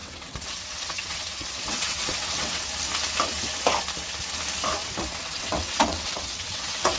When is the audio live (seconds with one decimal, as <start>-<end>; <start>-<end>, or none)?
2.6-4.8